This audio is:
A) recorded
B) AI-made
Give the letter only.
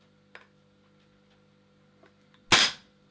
A